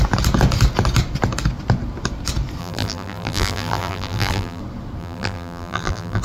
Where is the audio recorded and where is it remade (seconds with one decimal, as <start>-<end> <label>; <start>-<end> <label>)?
0.0-2.6 recorded; 2.6-4.6 remade; 4.6-5.0 recorded; 5.0-6.2 remade